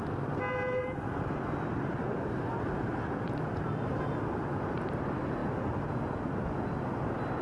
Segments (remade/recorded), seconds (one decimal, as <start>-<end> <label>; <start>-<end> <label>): 0.0-7.4 recorded